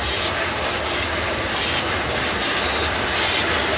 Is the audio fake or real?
real